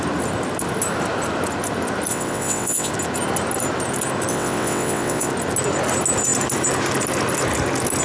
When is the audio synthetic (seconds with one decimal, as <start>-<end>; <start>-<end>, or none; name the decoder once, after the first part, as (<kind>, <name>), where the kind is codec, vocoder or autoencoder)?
2.1-2.9 (vocoder, WaveNeXt); 4.3-5.3

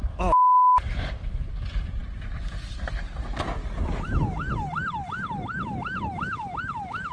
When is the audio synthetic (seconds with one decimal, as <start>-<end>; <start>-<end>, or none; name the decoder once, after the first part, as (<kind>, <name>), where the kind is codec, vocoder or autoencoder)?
none

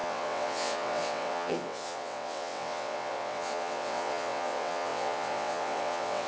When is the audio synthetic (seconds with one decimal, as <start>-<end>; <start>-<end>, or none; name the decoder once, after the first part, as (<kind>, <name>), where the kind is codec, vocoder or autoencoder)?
0.0-6.3 (vocoder, WaveNeXt)

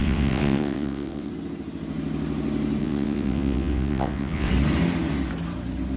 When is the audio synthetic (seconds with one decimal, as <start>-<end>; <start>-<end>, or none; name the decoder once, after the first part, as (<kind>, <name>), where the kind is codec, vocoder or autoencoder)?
0.0-1.3 (vocoder, WaveNeXt); 2.8-4.5

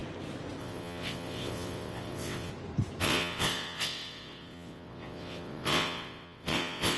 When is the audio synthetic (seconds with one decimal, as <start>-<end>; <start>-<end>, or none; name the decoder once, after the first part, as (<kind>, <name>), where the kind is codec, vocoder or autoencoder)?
0.6-2.5 (vocoder, WaveNeXt); 3.0-7.0

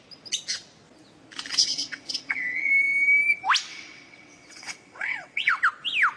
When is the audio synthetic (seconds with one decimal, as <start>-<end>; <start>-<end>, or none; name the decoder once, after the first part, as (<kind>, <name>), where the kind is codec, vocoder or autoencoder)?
1.5-2.7 (vocoder, WaveNeXt); 3.7-5.6

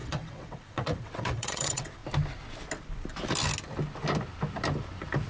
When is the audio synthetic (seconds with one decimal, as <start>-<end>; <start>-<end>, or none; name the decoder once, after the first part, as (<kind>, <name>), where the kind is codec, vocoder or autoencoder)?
0.0-2.0 (vocoder, WaveNeXt)